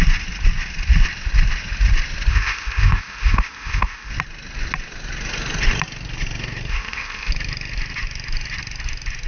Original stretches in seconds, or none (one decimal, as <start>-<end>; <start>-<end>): 0.0-2.3; 4.1-6.7; 7.3-9.3